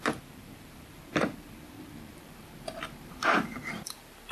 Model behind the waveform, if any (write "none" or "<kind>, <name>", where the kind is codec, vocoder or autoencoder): vocoder, BigVGAN v2